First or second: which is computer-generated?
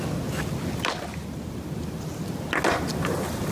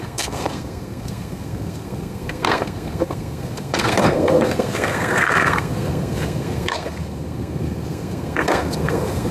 second